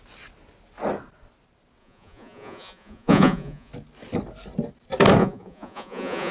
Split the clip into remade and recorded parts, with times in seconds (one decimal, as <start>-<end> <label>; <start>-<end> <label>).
0.0-1.8 recorded; 1.8-3.7 remade; 3.7-5.2 recorded; 5.2-6.3 remade